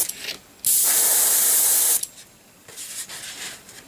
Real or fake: real